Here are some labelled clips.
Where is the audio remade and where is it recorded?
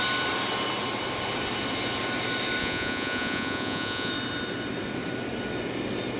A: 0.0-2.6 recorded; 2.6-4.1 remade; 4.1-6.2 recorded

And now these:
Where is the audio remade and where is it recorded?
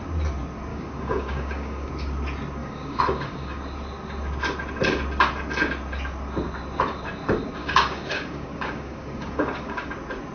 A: 0.0-0.7 recorded; 0.7-1.9 remade; 1.9-2.6 recorded; 2.6-3.6 remade; 3.6-7.6 recorded; 7.6-9.9 remade; 9.9-10.3 recorded